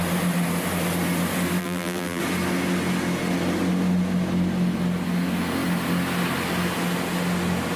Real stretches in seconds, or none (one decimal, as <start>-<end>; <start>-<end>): 0.0-1.6; 2.2-7.8